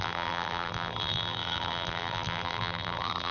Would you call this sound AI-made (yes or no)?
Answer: yes